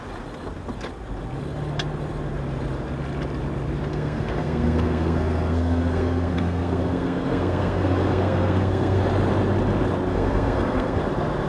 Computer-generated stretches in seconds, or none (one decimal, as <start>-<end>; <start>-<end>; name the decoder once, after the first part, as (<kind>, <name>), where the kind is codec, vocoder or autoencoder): 3.9-9.0 (codec, SNAC); 10.1-11.0